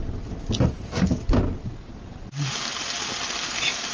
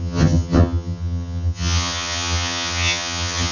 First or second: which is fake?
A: second